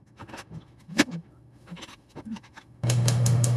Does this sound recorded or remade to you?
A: remade